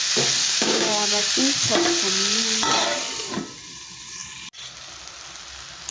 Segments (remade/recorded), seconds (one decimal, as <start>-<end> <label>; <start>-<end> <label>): 0.0-0.4 recorded; 0.4-1.2 remade; 1.2-5.9 recorded